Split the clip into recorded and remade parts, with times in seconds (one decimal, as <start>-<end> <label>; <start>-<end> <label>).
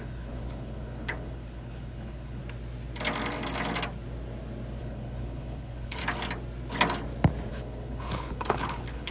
0.0-2.4 remade; 2.4-4.8 recorded; 4.8-6.0 remade; 6.0-7.5 recorded; 7.5-9.1 remade